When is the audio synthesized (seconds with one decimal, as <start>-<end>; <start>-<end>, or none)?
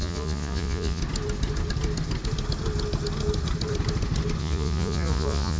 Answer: 0.0-1.0; 4.4-5.6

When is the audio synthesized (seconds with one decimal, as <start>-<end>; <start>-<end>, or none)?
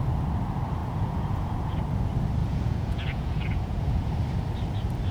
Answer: 0.8-1.8; 2.4-4.1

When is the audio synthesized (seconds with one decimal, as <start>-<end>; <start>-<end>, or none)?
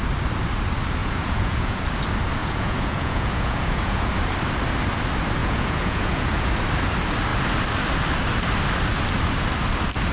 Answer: 1.0-1.8; 2.4-4.1; 5.4-6.5